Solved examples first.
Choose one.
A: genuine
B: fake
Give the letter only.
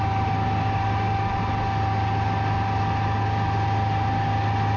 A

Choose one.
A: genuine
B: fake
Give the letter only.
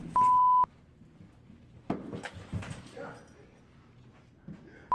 A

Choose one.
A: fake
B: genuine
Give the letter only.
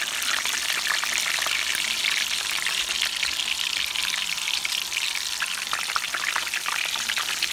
B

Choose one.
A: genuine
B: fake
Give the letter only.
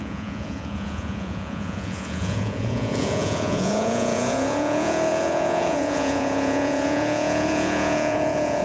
B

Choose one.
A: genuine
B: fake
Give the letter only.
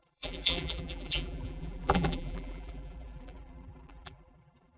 B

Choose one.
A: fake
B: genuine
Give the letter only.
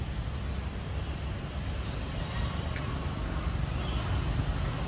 B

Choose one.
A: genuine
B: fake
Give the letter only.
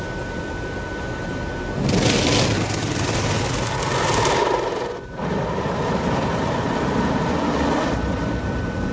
A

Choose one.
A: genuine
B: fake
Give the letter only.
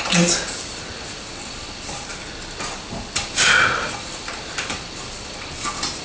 A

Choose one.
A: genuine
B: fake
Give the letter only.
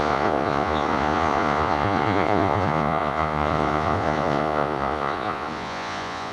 B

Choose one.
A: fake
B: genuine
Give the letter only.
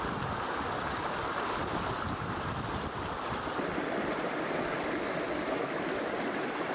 B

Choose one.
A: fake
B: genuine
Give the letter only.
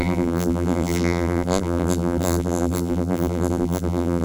A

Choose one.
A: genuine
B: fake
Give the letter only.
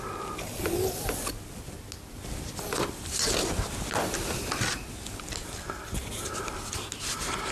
A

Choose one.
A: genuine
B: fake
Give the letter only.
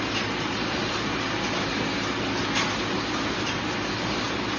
A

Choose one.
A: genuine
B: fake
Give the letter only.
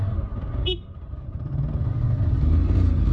A